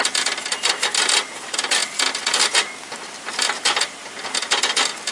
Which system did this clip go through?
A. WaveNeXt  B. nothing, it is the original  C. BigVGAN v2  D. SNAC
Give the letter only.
B